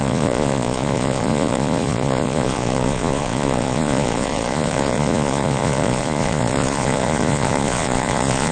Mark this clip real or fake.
fake